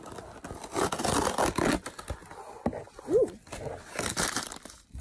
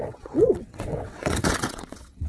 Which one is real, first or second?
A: first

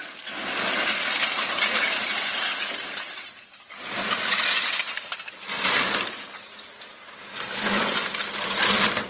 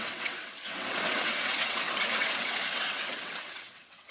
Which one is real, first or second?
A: first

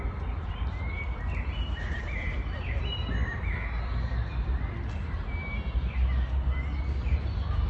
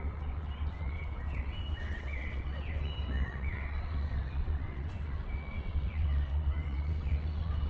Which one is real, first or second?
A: first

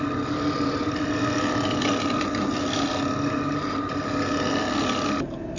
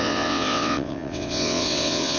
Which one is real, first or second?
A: first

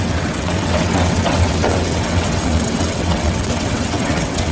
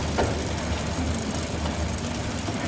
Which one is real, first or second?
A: second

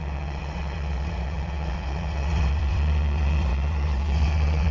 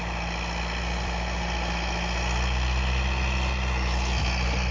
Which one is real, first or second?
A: second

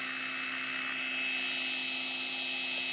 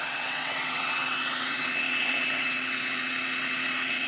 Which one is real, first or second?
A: first